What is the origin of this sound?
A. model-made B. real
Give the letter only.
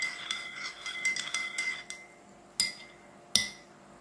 B